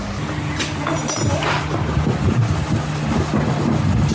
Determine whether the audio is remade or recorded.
recorded